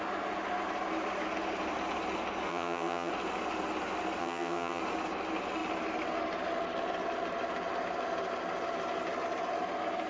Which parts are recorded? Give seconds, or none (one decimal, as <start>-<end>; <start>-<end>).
0.0-2.5; 3.1-4.2; 4.8-10.1